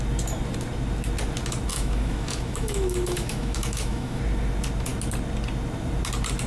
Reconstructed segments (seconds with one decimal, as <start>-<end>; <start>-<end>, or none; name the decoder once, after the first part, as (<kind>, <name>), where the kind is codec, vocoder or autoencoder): 1.7-4.2 (autoencoder, DAC-VAE)

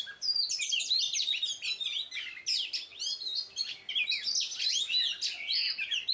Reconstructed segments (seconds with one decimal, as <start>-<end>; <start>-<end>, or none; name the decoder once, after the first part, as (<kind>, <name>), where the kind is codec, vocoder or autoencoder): none